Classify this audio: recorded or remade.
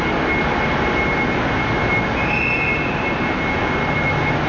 recorded